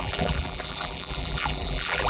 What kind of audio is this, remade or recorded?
remade